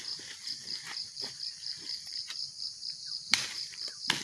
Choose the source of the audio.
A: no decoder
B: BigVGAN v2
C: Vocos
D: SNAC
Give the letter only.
B